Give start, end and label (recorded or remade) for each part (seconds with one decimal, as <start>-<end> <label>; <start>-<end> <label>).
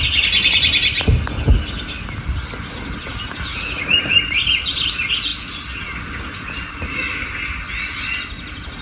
0.0-8.8 recorded